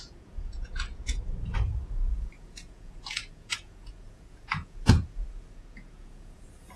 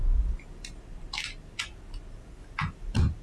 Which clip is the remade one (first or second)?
first